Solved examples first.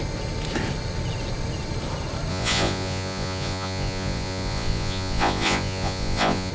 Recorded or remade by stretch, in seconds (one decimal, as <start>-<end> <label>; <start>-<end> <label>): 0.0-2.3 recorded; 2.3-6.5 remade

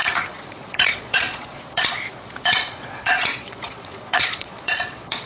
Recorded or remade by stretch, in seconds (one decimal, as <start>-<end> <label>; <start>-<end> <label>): 0.0-5.3 remade

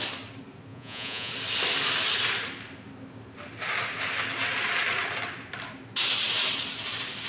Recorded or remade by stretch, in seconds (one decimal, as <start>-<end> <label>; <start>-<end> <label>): 0.0-0.7 recorded; 0.7-1.3 remade; 1.3-7.3 recorded

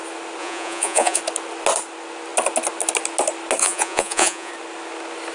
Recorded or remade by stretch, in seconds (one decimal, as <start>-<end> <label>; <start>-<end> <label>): 0.0-0.4 recorded; 0.4-1.2 remade; 1.2-3.6 recorded; 3.6-4.5 remade; 4.5-5.3 recorded

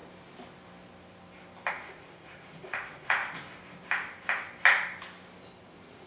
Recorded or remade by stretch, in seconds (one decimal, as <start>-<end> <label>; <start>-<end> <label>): 0.0-1.7 recorded; 1.7-3.2 remade; 3.2-5.6 recorded; 5.6-6.1 remade

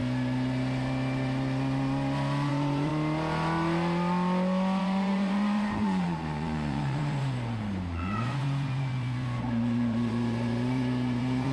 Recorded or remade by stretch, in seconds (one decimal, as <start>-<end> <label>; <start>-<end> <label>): 0.0-2.5 recorded; 2.5-2.9 remade; 2.9-4.8 recorded; 4.8-11.5 remade

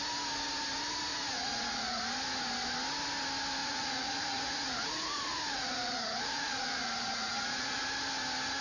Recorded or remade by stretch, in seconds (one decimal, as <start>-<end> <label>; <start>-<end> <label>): 0.0-1.1 recorded; 1.1-2.0 remade; 2.0-3.6 recorded; 3.6-7.8 remade; 7.8-8.6 recorded

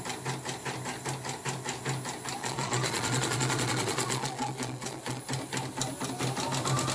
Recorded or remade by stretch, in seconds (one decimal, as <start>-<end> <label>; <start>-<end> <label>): 0.0-2.4 recorded; 2.4-5.2 remade; 5.2-6.9 recorded